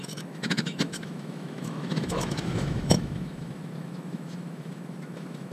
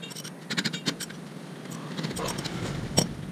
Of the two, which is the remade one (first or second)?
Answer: first